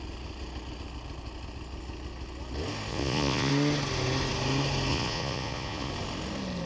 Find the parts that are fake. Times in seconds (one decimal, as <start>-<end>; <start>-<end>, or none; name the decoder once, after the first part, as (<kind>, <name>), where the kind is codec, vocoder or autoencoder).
2.9-3.5 (vocoder, Vocos); 4.9-5.9